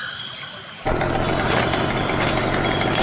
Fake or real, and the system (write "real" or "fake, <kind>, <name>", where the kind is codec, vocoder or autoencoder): real